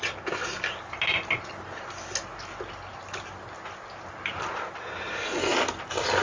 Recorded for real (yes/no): yes